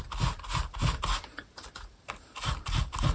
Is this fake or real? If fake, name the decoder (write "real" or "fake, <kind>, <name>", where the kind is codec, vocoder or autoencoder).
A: real